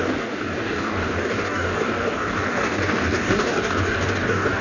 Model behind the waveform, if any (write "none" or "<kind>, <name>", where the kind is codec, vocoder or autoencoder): codec, DAC